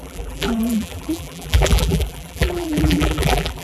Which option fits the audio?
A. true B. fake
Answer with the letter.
B